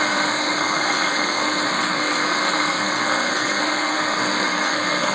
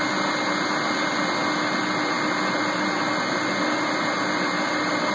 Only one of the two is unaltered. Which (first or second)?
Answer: second